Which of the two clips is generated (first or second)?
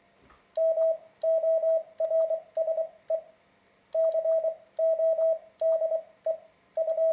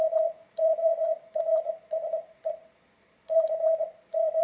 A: second